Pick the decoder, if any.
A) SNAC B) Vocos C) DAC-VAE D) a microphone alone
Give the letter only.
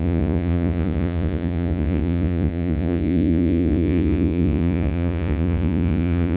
B